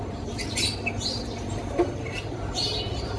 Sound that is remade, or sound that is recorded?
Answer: recorded